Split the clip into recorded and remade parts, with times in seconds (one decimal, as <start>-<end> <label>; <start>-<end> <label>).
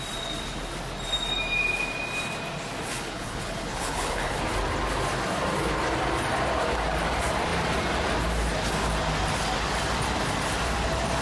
0.0-2.9 recorded; 2.9-4.4 remade; 4.4-11.2 recorded